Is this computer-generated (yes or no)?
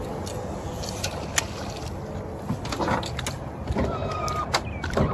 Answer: no